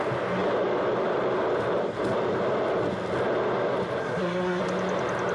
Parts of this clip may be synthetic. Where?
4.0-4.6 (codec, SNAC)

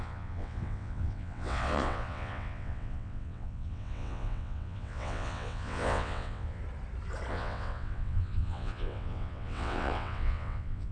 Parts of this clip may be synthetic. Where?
0.0-6.6 (vocoder, WaveNeXt); 7.3-10.9

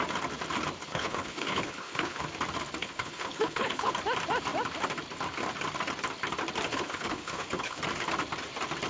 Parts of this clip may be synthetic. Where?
0.8-2.2 (codec, HILCodec); 2.8-3.9; 6.7-7.8

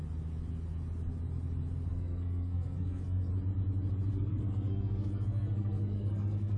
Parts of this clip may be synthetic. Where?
1.9-3.3 (codec, SNAC); 4.1-6.6